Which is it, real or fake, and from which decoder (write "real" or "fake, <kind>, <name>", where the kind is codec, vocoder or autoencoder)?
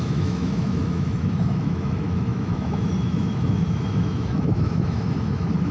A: fake, autoencoder, DAC-VAE